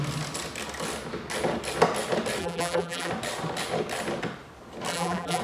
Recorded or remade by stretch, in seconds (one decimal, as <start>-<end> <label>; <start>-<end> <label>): 0.0-2.4 recorded; 2.4-3.1 remade; 3.1-4.9 recorded; 4.9-5.4 remade